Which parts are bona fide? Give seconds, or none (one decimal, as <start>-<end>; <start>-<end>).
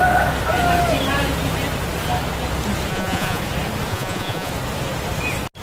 0.0-2.9; 3.4-3.9; 4.5-5.6